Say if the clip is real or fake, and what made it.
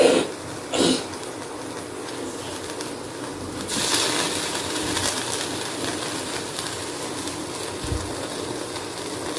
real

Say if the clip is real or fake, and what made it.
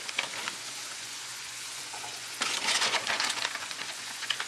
fake, vocoder, Vocos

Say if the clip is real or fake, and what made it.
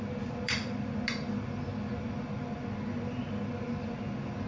real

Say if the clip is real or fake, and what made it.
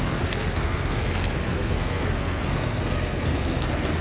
fake, codec, SNAC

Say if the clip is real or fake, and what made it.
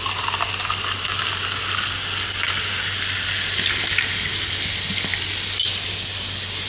real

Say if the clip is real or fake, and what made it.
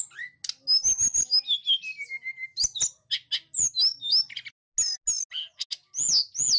real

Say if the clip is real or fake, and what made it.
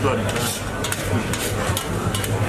fake, vocoder, BigVGAN v2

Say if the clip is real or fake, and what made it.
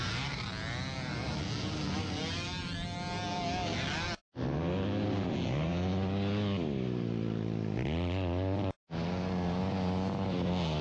real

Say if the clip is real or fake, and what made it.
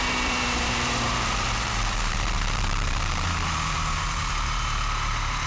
fake, vocoder, BigVGAN v2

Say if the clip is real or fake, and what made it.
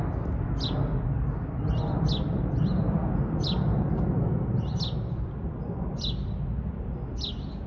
real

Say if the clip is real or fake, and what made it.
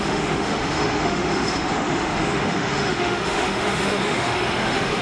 fake, autoencoder, DAC-VAE